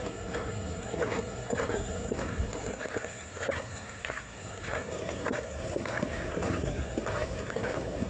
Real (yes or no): no